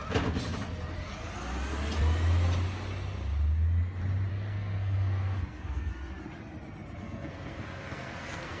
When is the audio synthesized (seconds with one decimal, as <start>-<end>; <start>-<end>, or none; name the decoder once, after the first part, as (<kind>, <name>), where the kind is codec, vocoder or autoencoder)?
4.3-5.9 (codec, SNAC); 7.0-8.6